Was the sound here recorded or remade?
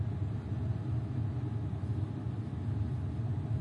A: recorded